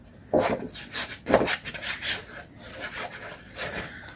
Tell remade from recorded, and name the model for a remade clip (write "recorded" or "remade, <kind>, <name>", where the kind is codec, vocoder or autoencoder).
recorded